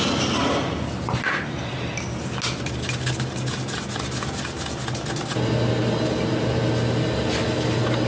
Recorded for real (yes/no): yes